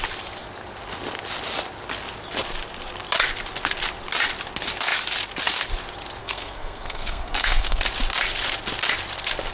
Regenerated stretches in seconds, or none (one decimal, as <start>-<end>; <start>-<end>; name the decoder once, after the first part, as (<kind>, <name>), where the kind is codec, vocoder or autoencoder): 6.2-7.8 (codec, SNAC)